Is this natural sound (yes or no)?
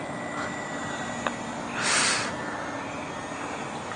yes